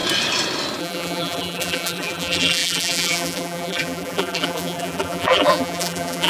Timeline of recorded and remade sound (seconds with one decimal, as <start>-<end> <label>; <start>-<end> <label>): 0.0-0.8 recorded; 0.8-6.3 remade